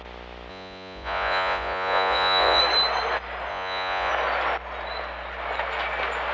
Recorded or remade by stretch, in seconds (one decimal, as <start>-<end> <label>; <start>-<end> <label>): 0.0-0.5 recorded; 0.5-2.6 remade; 2.6-3.5 recorded; 3.5-4.1 remade; 4.1-6.3 recorded